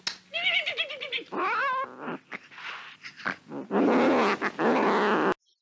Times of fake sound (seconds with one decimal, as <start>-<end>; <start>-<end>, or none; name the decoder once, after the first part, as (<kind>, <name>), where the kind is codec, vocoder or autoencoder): none